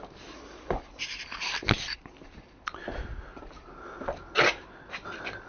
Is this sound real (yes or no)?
yes